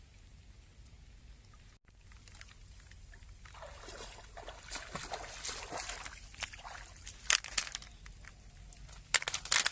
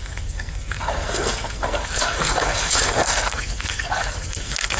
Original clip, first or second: first